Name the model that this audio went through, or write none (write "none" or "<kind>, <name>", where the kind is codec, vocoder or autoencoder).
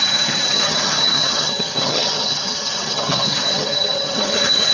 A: vocoder, HiFi-GAN